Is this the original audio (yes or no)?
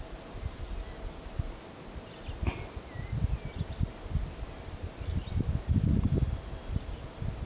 yes